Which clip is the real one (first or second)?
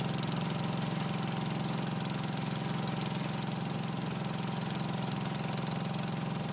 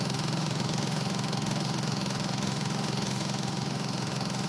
first